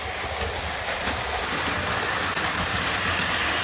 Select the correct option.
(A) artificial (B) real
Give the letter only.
B